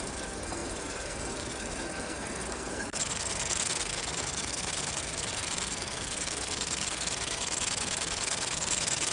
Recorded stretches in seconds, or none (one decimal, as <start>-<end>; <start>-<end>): none